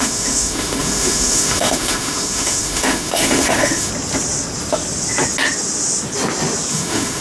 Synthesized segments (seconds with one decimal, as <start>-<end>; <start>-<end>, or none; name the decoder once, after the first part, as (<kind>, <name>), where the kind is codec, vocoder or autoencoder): 0.0-3.9 (autoencoder, DAC-VAE); 6.7-7.2